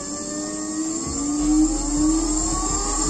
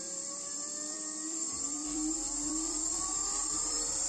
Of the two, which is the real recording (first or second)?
first